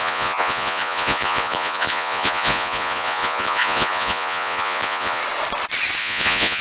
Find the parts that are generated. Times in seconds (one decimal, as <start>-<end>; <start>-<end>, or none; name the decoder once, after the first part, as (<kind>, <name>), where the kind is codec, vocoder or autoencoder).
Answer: 0.0-5.2 (vocoder, Vocos); 6.0-6.6